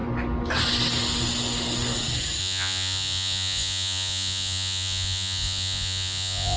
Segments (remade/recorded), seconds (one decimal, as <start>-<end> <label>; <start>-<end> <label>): 0.0-2.4 recorded; 2.4-6.6 remade